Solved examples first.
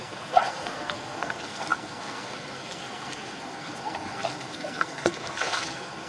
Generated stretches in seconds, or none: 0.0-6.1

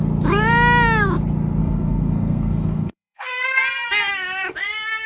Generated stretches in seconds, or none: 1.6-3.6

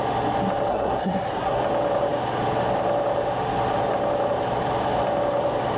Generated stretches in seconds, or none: 0.7-1.6

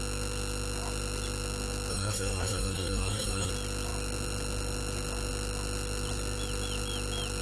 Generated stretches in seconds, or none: 1.9-3.5

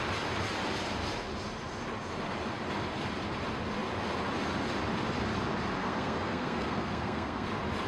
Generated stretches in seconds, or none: 5.8-7.5

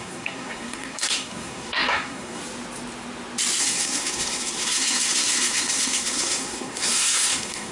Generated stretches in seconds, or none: 0.0-2.4; 3.6-7.7

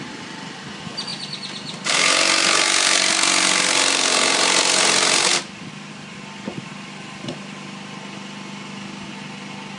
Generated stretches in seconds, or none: none

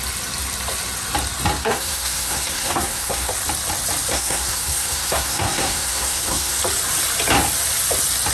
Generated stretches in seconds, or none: 1.6-3.3; 4.1-6.6